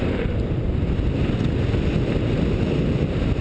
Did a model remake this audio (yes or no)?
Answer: no